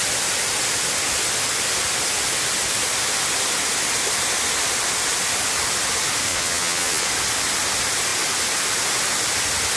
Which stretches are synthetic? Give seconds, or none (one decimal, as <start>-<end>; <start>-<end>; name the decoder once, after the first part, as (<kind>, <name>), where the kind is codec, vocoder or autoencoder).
6.3-7.1 (vocoder, Vocos)